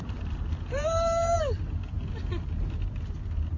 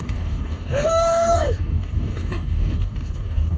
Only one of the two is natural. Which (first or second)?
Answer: first